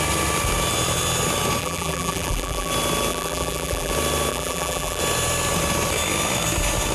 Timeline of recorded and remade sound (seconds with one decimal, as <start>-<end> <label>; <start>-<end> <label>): 0.0-1.6 recorded; 1.6-2.7 remade; 2.7-3.1 recorded; 3.1-3.9 remade; 3.9-4.3 recorded; 4.3-5.0 remade; 5.0-6.9 recorded